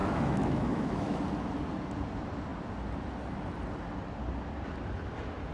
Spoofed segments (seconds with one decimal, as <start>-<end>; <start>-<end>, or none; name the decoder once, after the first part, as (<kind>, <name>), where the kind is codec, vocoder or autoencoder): 0.0-1.2 (autoencoder, DAC-VAE)